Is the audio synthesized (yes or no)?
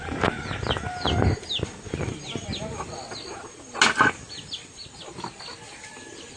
no